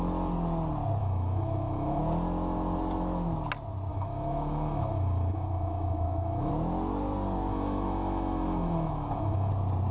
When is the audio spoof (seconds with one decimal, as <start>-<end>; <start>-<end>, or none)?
1.0-2.0; 3.9-6.5; 7.5-9.5